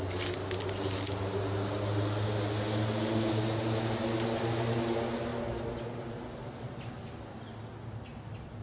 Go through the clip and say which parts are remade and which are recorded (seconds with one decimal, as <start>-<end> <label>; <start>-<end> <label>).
0.0-8.6 recorded